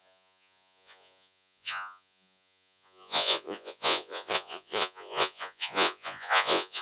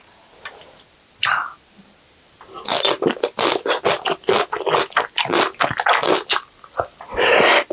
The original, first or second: second